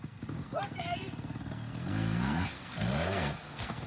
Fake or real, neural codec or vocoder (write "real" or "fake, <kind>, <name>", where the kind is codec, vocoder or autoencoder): fake, codec, SNAC